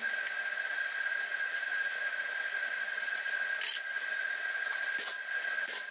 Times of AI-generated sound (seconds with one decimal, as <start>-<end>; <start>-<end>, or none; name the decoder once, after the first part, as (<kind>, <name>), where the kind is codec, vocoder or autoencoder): none